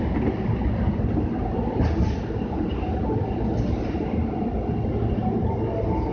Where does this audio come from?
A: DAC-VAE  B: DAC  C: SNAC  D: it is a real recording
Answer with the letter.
D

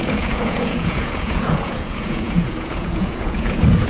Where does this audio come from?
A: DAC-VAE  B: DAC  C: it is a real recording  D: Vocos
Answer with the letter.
D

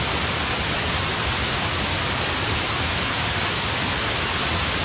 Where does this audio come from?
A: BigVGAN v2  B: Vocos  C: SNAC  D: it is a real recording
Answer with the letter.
D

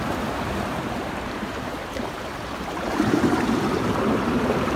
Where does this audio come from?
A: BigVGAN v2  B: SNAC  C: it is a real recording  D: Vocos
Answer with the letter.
A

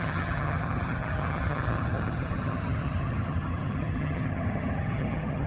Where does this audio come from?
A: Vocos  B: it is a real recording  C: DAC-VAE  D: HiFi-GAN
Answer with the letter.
D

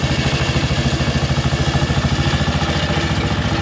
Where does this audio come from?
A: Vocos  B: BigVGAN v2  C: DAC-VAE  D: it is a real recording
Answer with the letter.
D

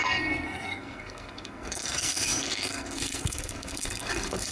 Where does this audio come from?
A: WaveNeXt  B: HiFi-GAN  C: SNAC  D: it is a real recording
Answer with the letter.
C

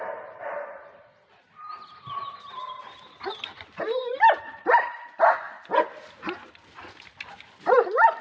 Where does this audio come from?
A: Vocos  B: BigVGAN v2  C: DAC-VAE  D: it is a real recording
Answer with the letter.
B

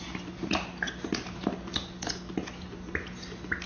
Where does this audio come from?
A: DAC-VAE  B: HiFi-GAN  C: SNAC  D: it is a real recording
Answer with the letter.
D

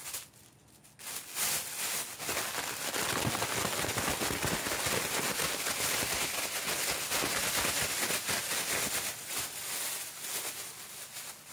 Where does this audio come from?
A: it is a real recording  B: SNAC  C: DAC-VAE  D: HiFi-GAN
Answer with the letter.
A